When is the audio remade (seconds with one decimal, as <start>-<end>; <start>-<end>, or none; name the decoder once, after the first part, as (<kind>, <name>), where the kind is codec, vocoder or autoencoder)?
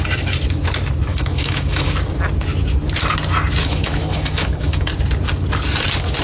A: 1.1-1.9 (autoencoder, DAC-VAE); 3.6-4.9